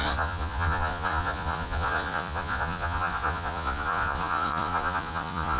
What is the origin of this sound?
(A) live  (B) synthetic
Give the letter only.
B